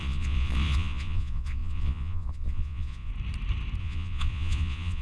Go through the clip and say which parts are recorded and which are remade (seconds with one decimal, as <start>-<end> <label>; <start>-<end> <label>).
0.0-3.1 remade; 3.1-3.8 recorded; 3.8-5.0 remade